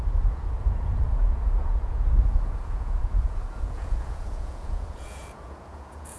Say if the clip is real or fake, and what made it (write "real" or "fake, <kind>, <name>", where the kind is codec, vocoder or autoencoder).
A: fake, vocoder, Vocos